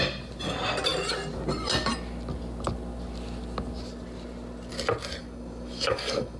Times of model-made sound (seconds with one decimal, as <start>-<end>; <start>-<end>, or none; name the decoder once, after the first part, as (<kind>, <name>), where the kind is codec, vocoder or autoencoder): 5.2-6.4 (codec, DAC)